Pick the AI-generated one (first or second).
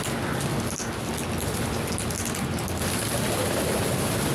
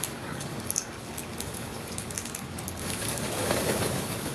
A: second